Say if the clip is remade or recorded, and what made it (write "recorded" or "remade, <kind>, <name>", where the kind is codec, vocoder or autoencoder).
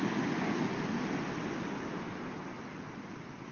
recorded